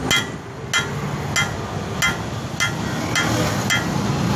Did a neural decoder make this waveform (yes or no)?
no